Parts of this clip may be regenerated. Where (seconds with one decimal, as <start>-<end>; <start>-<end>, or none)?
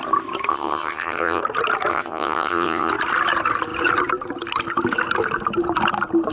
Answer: 0.5-1.4; 1.9-2.9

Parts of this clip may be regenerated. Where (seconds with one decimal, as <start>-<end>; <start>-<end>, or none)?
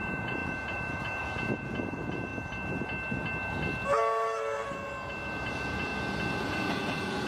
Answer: 0.0-2.3; 5.5-5.9; 6.4-7.3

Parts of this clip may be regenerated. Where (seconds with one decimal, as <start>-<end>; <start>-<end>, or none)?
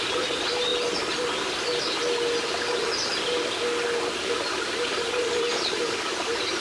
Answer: 0.0-0.7; 4.3-6.6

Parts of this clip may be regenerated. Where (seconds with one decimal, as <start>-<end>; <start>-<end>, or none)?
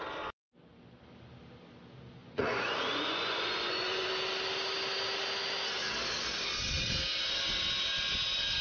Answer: 2.2-4.1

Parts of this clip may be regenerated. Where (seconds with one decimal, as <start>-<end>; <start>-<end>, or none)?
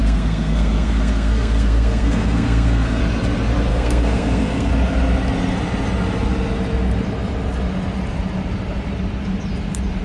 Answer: 0.0-3.0; 3.7-4.7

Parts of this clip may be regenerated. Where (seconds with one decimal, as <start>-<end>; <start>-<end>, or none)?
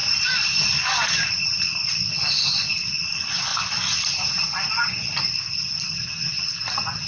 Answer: none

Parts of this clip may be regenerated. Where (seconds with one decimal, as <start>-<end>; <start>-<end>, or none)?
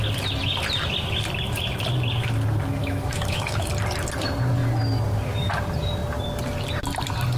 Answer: 2.8-3.7